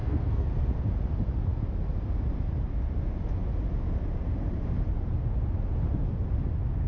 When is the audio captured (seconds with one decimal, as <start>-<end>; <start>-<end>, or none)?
0.7-6.9